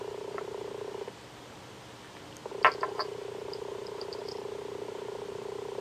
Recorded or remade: remade